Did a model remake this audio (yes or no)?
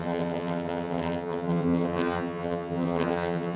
yes